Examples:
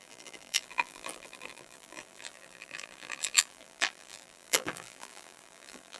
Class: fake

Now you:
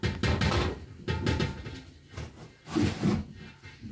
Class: real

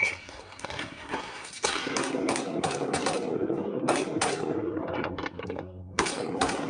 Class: fake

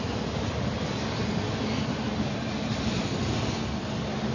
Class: real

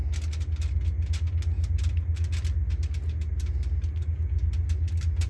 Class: real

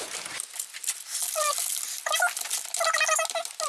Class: real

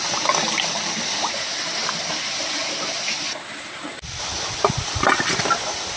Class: real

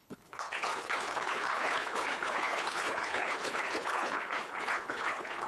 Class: fake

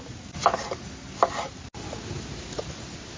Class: real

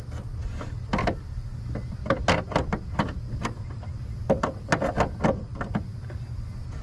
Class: real